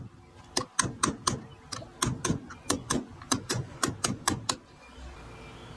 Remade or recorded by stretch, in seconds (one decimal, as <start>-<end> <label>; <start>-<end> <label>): 0.0-2.3 recorded; 2.3-4.4 remade; 4.4-5.8 recorded